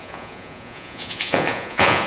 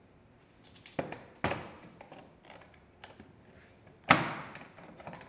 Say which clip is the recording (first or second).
second